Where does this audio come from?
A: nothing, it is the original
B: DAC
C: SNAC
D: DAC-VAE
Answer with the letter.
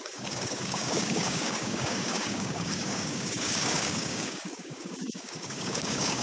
B